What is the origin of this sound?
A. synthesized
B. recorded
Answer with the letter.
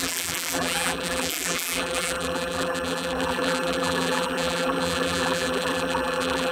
A